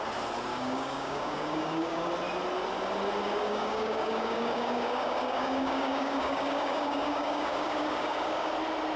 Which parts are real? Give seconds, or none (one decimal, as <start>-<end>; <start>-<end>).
0.0-0.5; 2.1-3.2; 8.5-9.0